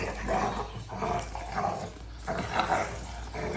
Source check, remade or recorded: recorded